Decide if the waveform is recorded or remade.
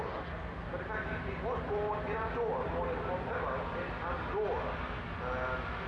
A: recorded